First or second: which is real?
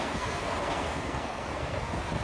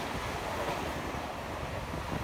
second